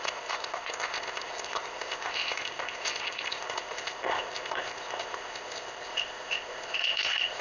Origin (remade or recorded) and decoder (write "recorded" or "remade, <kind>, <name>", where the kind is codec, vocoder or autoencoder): remade, codec, ZipCodec